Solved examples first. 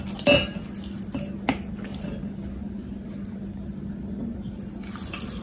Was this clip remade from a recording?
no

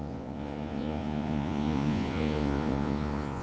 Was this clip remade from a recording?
yes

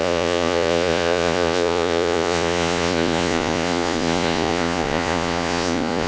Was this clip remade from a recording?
yes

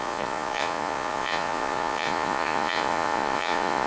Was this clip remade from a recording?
yes